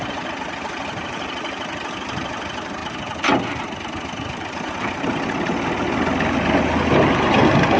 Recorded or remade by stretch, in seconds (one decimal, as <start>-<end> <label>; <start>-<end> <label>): 0.0-7.8 recorded